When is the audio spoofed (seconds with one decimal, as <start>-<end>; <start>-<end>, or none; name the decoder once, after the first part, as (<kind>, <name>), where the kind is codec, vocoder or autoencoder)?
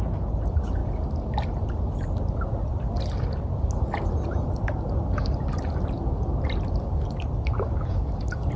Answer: none